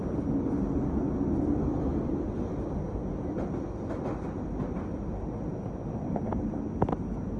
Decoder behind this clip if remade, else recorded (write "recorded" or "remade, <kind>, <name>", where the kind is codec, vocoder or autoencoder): recorded